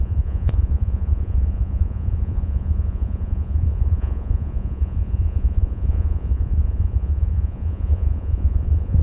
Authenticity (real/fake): fake